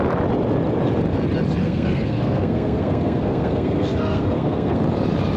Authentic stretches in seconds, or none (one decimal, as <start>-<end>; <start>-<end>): 0.0-1.6; 4.8-5.4